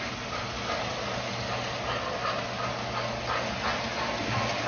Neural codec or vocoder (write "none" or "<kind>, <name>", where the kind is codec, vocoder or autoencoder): none